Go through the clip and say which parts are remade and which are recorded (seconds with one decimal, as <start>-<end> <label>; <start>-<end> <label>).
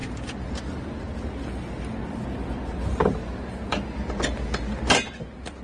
0.0-5.6 recorded